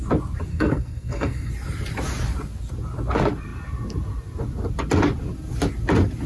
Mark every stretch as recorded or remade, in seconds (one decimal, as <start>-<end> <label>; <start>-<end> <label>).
0.0-0.5 recorded; 0.5-1.5 remade; 1.5-6.3 recorded